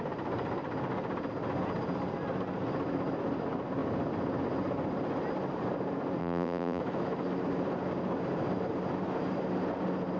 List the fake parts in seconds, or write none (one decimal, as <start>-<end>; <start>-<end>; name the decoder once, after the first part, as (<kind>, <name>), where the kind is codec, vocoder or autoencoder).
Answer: 6.2-6.8 (vocoder, BigVGAN v2)